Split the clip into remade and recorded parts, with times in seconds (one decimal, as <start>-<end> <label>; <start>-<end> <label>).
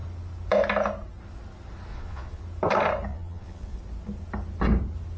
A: 0.0-1.9 recorded; 1.9-2.4 remade; 2.4-3.1 recorded; 3.1-3.8 remade; 3.8-5.2 recorded